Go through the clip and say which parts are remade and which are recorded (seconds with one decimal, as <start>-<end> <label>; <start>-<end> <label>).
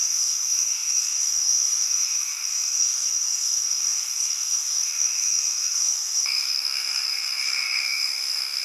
0.0-8.6 remade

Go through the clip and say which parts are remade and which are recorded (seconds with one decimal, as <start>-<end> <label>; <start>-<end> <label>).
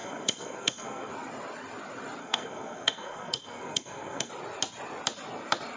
0.0-1.1 remade; 1.1-2.2 recorded; 2.2-4.3 remade; 4.3-5.8 recorded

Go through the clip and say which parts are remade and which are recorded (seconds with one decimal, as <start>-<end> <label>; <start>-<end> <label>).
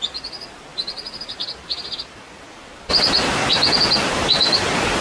0.0-5.0 recorded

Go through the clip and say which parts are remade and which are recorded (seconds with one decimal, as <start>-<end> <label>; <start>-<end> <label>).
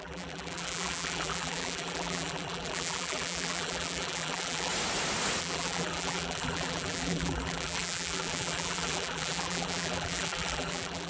0.0-4.7 remade; 4.7-5.4 recorded; 5.4-11.1 remade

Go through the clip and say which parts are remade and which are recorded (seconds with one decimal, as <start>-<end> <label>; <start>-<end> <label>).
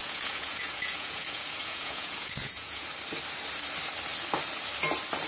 0.0-2.9 remade; 2.9-5.3 recorded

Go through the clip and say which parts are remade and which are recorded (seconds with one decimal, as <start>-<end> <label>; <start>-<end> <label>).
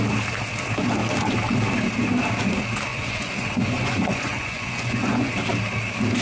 0.0-2.9 recorded; 2.9-5.3 remade; 5.3-6.2 recorded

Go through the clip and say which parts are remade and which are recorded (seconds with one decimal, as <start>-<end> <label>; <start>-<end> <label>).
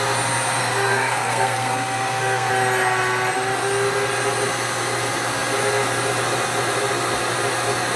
0.0-0.6 recorded; 0.6-2.5 remade; 2.5-8.0 recorded